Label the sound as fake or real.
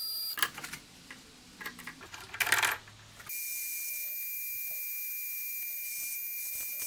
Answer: real